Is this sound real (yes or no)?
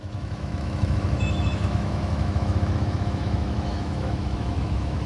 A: no